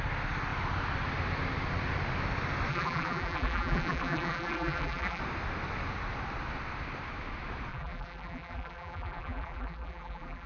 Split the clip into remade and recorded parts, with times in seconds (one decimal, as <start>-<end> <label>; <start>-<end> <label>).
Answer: 0.0-2.7 recorded; 2.7-5.2 remade; 5.2-7.7 recorded; 7.7-10.5 remade